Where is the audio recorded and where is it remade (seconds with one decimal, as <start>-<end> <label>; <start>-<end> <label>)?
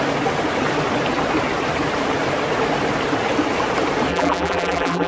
0.0-4.1 recorded; 4.1-5.1 remade